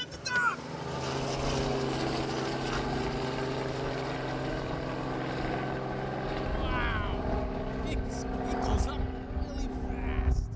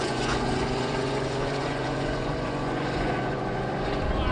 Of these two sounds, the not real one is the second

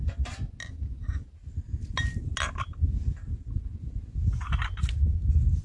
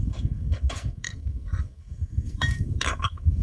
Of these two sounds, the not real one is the second